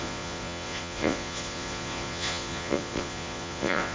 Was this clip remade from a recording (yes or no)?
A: yes